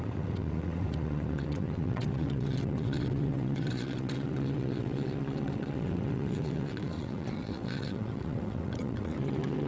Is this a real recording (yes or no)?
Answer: no